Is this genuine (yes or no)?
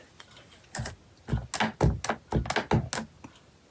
yes